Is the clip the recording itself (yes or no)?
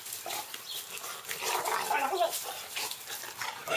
yes